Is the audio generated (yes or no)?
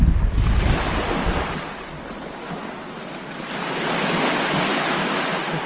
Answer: no